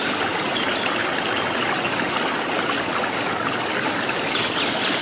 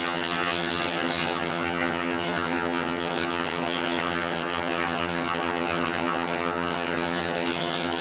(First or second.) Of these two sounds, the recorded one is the first